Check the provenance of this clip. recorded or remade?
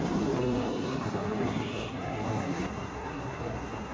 remade